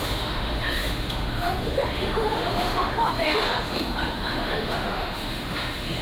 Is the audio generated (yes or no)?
yes